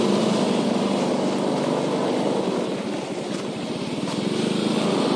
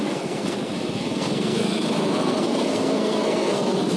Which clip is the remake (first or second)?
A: second